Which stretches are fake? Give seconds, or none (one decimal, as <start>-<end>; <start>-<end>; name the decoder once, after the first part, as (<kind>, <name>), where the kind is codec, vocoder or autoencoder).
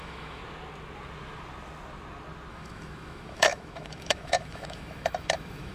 0.0-0.4 (autoencoder, DAC-VAE); 2.5-5.7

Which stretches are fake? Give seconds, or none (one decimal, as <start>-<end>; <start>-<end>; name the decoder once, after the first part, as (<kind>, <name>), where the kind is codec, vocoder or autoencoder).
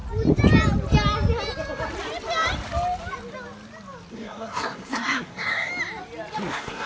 4.1-5.7 (codec, SNAC); 6.5-6.9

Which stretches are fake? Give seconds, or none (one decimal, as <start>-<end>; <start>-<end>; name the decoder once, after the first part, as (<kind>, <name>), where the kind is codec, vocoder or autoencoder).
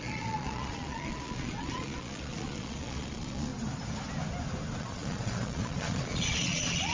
0.0-3.5 (vocoder, Vocos); 4.8-6.9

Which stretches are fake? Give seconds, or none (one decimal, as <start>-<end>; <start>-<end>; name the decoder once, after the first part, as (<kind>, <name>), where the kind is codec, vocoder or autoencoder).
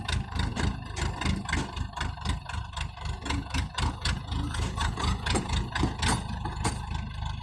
3.2-6.9 (vocoder, Vocos)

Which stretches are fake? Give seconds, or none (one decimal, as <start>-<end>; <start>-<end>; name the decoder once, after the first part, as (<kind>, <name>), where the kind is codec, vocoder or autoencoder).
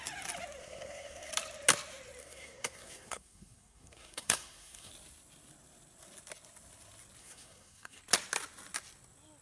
0.6-1.3 (codec, SNAC); 2.2-4.9; 7.2-8.0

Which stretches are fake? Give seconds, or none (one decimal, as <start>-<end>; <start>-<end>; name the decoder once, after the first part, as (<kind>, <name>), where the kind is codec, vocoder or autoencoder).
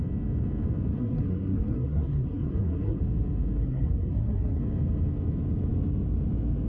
0.9-3.0 (codec, SNAC); 3.6-4.6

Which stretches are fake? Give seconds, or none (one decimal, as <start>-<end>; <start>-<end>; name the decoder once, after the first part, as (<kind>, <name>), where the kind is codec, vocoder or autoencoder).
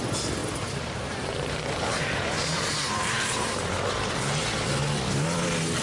0.4-3.9 (vocoder, BigVGAN v2)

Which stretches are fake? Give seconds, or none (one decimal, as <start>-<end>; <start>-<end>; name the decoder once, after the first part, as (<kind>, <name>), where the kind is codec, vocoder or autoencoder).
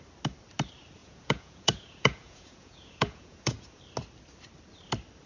1.0-3.8 (vocoder, Vocos)